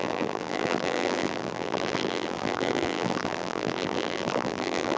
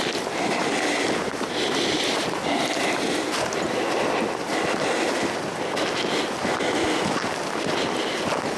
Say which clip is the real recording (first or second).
second